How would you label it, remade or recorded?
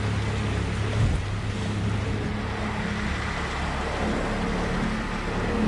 recorded